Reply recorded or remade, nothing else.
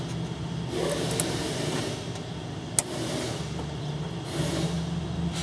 recorded